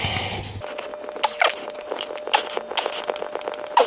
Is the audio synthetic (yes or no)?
no